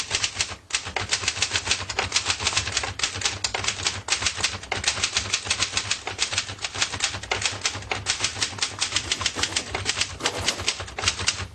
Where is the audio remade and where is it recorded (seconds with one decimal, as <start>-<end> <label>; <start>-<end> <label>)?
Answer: 0.0-11.5 recorded